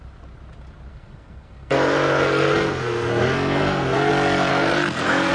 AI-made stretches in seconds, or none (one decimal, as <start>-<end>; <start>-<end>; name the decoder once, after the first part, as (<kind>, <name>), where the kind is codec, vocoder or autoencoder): 0.9-4.1 (codec, SNAC); 4.5-5.3